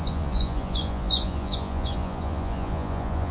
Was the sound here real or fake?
fake